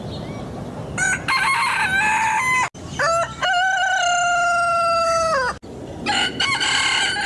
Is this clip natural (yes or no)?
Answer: yes